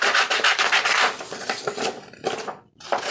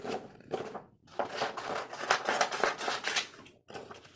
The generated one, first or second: first